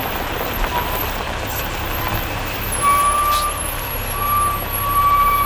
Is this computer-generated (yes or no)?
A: no